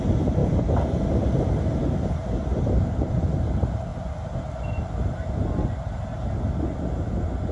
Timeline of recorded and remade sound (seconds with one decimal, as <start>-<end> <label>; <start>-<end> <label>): 0.0-0.4 recorded; 0.4-1.8 remade; 1.8-2.5 recorded; 2.5-3.1 remade; 3.1-7.5 recorded